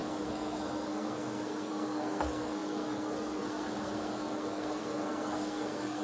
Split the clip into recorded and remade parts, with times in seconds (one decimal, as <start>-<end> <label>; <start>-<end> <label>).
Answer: 0.0-6.0 remade